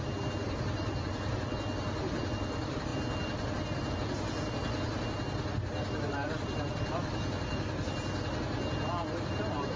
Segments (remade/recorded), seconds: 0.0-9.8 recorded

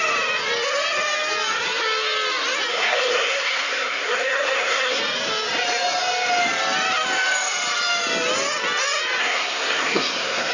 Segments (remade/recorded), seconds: 0.0-2.7 recorded; 2.7-5.0 remade; 5.0-9.2 recorded; 9.2-10.5 remade

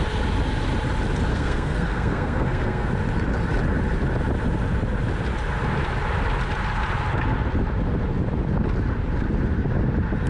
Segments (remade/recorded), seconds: 0.0-1.3 recorded; 1.3-2.9 remade; 2.9-10.3 recorded